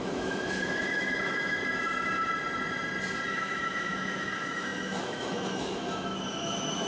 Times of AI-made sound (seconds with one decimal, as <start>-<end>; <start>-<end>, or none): 0.0-1.6; 3.3-6.9